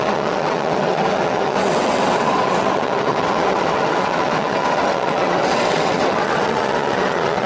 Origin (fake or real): fake